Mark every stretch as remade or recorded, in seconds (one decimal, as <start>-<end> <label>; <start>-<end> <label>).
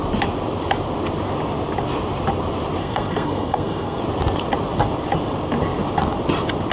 0.0-2.8 recorded; 2.8-4.0 remade; 4.0-6.7 recorded